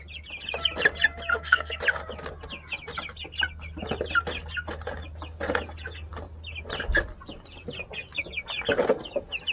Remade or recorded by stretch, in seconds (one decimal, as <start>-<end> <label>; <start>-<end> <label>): 0.0-1.3 recorded; 1.3-1.8 remade; 1.8-9.5 recorded